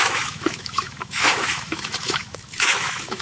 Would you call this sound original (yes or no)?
no